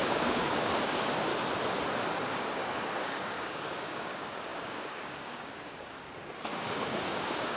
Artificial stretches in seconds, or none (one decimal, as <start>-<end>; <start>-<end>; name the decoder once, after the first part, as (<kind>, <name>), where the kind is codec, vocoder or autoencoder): 0.0-1.3 (codec, DAC); 2.3-7.6